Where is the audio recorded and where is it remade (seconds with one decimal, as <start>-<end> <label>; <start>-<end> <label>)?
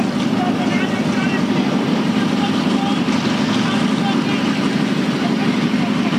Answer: 0.0-6.2 recorded